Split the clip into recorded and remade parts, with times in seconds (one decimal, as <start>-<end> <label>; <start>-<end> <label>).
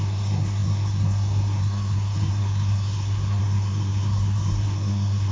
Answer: 0.0-5.3 remade